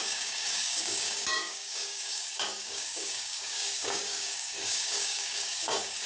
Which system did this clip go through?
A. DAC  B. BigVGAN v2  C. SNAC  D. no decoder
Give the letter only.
A